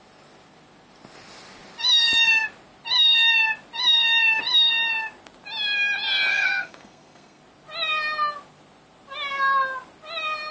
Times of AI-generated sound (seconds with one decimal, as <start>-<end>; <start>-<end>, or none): 6.3-7.4

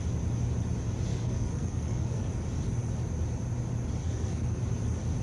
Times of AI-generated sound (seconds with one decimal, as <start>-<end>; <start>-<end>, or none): 1.1-2.3; 4.0-4.6

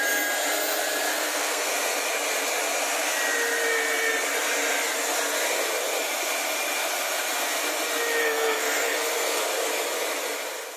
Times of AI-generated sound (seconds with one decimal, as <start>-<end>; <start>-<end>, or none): 1.1-1.7; 8.2-9.4